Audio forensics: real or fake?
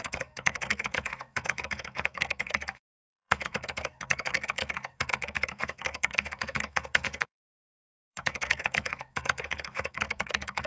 fake